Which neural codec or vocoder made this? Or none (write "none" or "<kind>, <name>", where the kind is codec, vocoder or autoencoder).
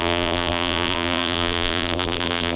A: vocoder, BigVGAN v2